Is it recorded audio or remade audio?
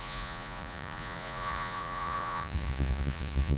remade